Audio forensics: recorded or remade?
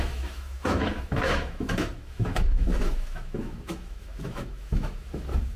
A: remade